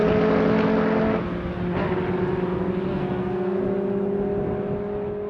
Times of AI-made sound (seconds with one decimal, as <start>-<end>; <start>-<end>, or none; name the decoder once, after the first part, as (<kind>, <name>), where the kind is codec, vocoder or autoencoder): 2.9-3.6 (codec, SNAC)